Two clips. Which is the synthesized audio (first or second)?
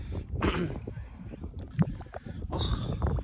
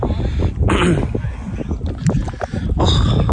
first